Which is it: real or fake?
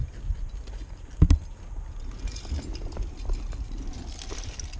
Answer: real